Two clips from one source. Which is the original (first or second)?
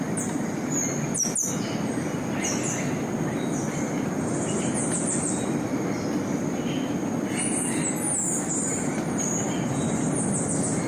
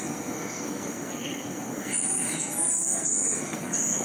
first